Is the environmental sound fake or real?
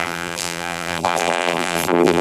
fake